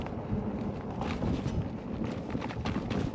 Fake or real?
real